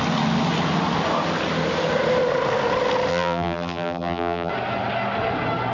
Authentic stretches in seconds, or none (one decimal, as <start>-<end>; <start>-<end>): 0.0-3.1; 4.5-5.7